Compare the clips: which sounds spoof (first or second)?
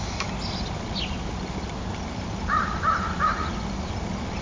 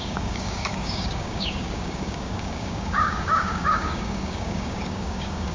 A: second